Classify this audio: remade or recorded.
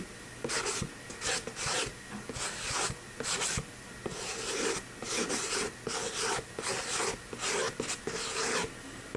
recorded